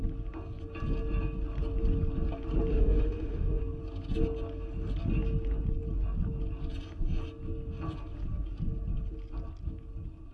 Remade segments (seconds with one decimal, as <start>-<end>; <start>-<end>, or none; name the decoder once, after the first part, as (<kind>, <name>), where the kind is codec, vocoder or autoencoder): 2.7-3.6 (autoencoder, DAC-VAE)